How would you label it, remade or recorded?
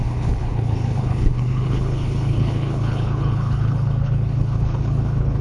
remade